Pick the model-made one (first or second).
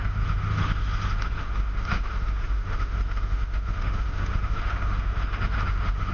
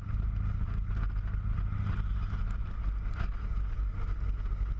first